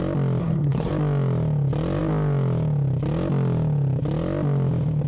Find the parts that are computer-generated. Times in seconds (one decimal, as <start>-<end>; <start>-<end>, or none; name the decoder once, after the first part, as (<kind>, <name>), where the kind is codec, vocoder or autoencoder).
0.4-0.9 (codec, SNAC)